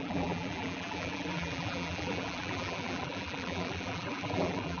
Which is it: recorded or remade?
remade